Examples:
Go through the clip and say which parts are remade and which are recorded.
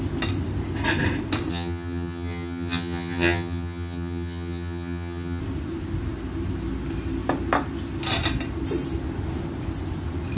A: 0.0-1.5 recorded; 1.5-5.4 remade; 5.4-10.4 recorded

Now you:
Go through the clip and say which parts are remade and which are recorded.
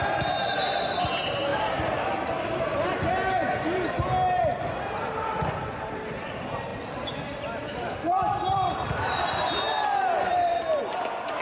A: 0.0-1.5 recorded; 1.5-2.6 remade; 2.6-6.7 recorded; 6.7-10.8 remade; 10.8-11.4 recorded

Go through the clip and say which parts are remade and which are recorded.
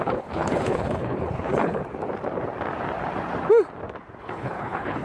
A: 0.0-1.8 remade; 1.8-4.2 recorded; 4.2-5.0 remade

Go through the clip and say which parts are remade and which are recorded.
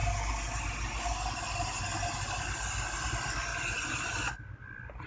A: 0.0-5.1 recorded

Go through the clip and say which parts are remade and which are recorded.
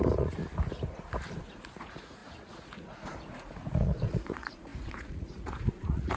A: 0.0-0.4 remade; 0.4-1.5 recorded; 1.5-6.2 remade